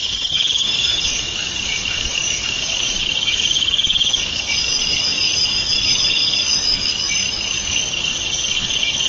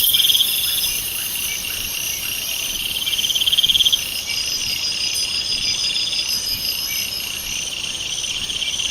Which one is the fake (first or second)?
first